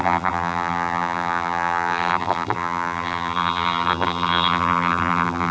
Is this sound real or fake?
fake